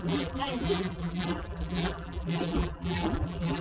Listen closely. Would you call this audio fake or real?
fake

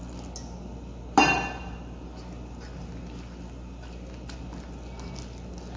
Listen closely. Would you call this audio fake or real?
real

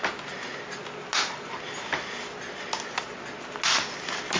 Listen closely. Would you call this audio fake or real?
real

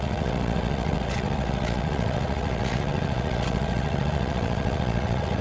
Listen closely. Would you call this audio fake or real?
fake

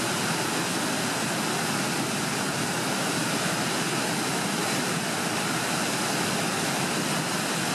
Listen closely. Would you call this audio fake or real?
real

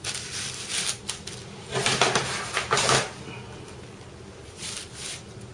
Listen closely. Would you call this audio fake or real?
real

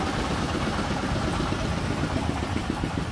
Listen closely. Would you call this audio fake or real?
real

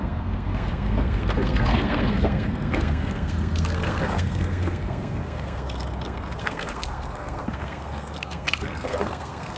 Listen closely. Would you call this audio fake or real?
fake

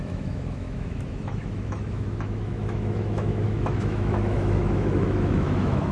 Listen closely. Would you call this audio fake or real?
fake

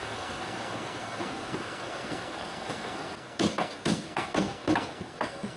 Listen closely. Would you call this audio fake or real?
fake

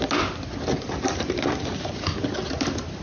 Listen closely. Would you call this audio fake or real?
real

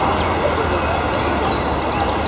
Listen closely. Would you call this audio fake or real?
real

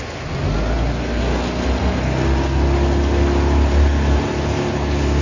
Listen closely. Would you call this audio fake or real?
real